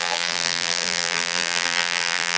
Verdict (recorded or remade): remade